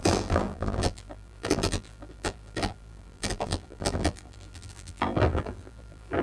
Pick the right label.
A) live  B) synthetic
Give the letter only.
B